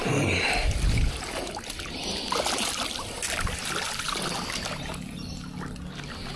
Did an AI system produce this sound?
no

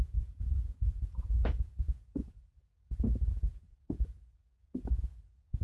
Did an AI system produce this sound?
yes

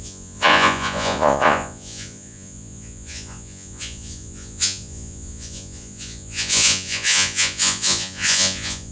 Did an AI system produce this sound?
yes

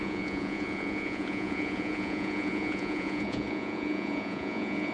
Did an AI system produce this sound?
yes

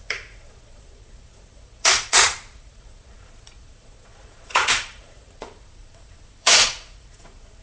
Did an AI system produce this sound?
yes